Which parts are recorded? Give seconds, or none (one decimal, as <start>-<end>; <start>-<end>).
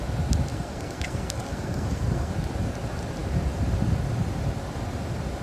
0.0-0.5; 2.3-5.4